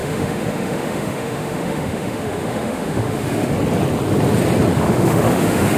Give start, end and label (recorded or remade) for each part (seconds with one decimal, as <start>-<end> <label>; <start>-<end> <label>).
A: 0.0-3.5 remade; 3.5-4.7 recorded; 4.7-5.8 remade